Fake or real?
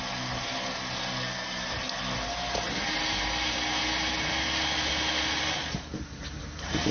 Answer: real